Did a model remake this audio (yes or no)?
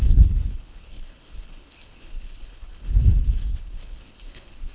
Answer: yes